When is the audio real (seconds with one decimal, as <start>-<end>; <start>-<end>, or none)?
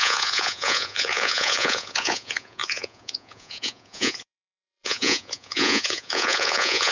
none